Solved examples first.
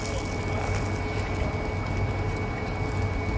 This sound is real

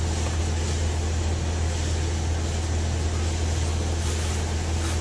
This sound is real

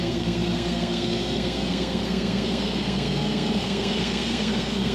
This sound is fake